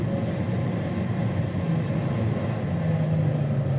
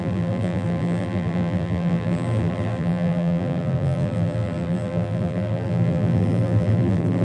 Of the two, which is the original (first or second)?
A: first